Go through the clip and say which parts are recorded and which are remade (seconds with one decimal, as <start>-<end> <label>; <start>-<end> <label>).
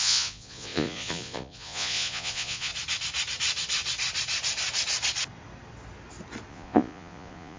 0.0-2.7 remade; 2.7-6.5 recorded; 6.5-7.6 remade